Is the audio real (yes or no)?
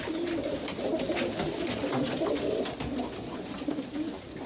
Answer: yes